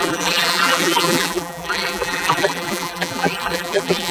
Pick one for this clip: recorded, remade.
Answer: remade